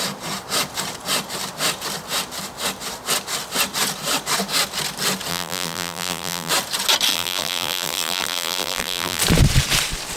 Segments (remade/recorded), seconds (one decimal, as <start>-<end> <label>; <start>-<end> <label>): 0.0-5.3 recorded; 5.3-6.5 remade; 6.5-7.1 recorded; 7.1-9.2 remade; 9.2-10.2 recorded